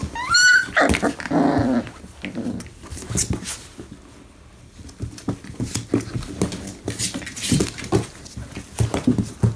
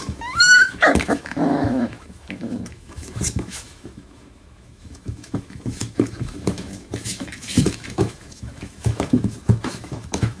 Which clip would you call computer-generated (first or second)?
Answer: second